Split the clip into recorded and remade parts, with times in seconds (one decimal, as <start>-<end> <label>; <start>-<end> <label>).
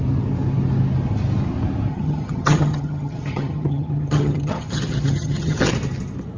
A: 0.0-1.9 recorded; 1.9-5.7 remade; 5.7-6.4 recorded